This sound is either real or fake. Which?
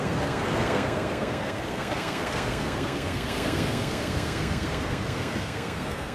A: fake